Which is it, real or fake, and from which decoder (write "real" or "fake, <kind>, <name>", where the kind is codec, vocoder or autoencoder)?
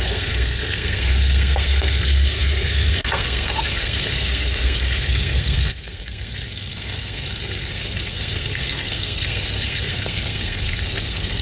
fake, codec, SNAC